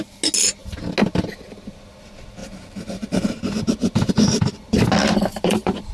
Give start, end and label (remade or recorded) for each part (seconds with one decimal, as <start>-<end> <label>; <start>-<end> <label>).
0.0-2.4 recorded; 2.4-3.4 remade; 3.4-5.3 recorded; 5.3-5.9 remade